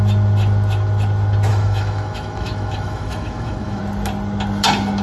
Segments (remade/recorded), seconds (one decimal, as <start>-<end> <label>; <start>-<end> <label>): 0.0-1.5 recorded; 1.5-3.8 remade; 3.8-5.0 recorded